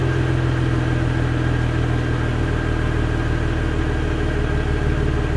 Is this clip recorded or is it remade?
recorded